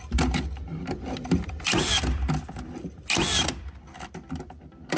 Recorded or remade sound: recorded